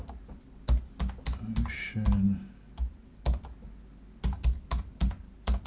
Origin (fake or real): real